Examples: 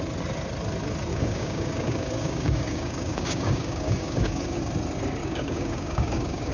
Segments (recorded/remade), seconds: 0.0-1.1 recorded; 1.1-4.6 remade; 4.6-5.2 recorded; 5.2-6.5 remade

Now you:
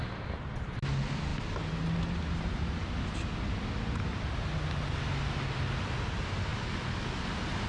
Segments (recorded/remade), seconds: 0.0-7.7 recorded

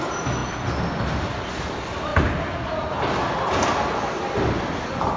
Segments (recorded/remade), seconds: 0.0-5.2 recorded

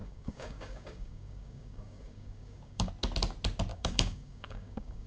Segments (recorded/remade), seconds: 0.0-2.9 remade; 2.9-3.7 recorded; 3.7-5.1 remade

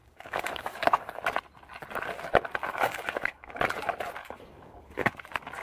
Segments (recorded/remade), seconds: 0.0-1.2 remade; 1.2-2.7 recorded; 2.7-3.5 remade; 3.5-4.2 recorded; 4.2-5.1 remade; 5.1-5.6 recorded